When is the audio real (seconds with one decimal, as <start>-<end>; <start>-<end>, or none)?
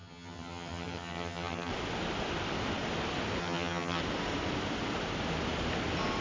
1.7-3.4; 4.0-6.2